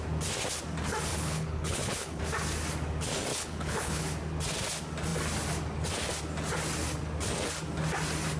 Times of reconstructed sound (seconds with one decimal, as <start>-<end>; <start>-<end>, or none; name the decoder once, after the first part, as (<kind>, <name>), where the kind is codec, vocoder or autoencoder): 1.1-2.2 (codec, HILCodec); 3.3-4.0